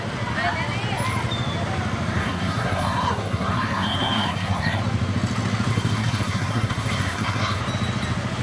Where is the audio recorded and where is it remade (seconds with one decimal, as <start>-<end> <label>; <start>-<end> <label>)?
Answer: 0.0-2.2 recorded; 2.2-4.8 remade; 4.8-5.7 recorded; 5.7-7.6 remade; 7.6-8.4 recorded